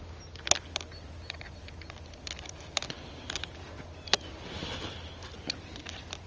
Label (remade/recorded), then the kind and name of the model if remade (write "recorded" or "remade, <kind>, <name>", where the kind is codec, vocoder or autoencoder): recorded